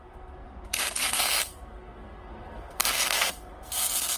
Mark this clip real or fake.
fake